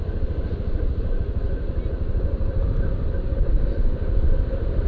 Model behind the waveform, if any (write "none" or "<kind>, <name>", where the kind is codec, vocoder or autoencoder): none